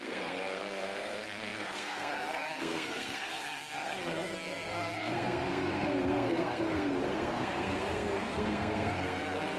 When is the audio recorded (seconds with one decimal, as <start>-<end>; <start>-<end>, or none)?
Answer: none